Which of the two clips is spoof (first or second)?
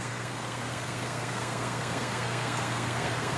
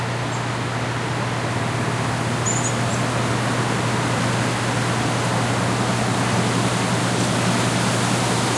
first